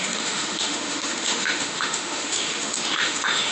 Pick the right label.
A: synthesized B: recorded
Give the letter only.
A